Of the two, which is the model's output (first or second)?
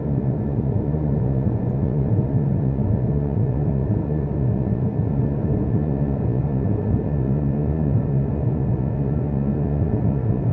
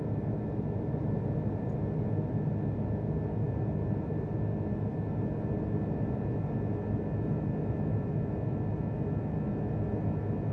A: first